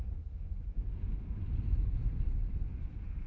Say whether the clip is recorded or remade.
recorded